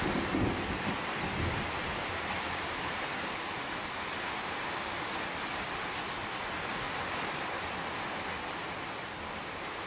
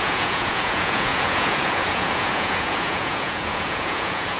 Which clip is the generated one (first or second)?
second